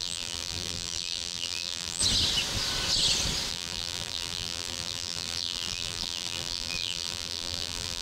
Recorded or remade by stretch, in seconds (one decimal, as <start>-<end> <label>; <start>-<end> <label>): 0.0-2.0 remade; 2.0-3.5 recorded; 3.5-8.0 remade